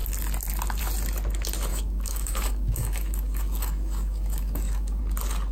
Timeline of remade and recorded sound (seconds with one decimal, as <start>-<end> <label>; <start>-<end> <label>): 0.0-1.7 recorded; 1.7-5.0 remade; 5.0-5.5 recorded